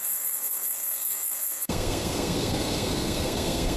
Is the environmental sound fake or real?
fake